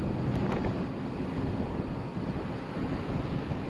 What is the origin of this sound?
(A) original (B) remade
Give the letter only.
A